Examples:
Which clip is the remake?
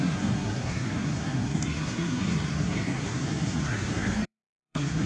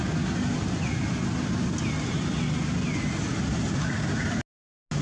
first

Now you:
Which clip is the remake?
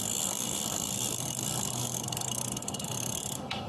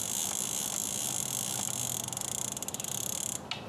first